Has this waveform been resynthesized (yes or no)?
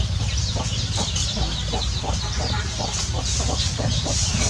no